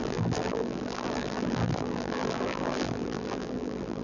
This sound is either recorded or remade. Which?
remade